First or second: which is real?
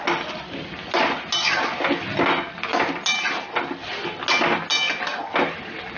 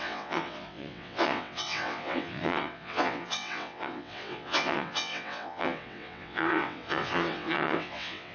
first